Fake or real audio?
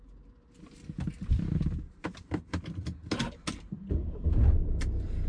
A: real